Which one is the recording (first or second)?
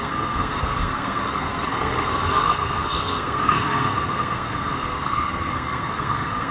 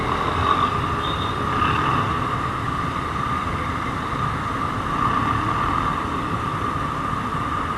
second